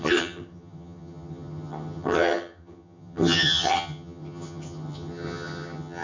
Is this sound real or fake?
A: fake